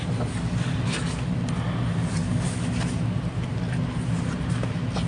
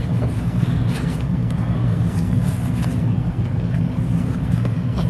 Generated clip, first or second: second